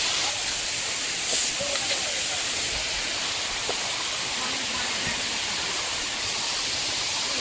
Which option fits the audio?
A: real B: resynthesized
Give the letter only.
A